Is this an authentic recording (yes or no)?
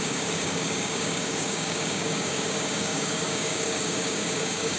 no